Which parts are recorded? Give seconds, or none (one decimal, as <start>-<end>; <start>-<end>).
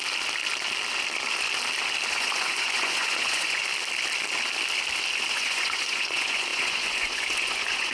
0.0-2.1; 3.6-5.3